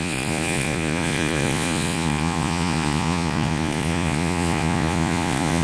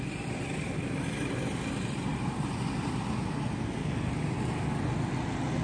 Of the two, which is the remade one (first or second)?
first